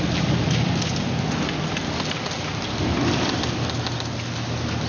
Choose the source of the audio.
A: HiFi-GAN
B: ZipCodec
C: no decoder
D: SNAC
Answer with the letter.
C